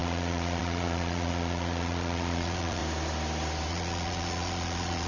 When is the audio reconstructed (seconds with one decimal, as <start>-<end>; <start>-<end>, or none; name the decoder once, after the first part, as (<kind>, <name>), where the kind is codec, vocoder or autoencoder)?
0.0-2.8 (vocoder, Vocos); 3.7-5.1